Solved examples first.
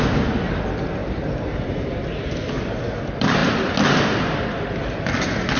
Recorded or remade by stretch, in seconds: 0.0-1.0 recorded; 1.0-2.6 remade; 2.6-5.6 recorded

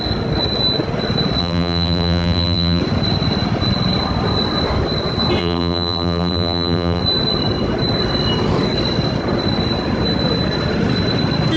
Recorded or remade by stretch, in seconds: 0.0-1.4 recorded; 1.4-2.8 remade; 2.8-5.4 recorded; 5.4-7.0 remade; 7.0-11.6 recorded

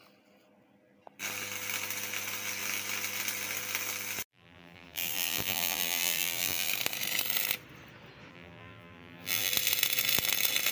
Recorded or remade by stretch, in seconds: 0.0-4.3 recorded; 4.3-6.7 remade; 6.7-8.3 recorded; 8.3-9.5 remade; 9.5-10.7 recorded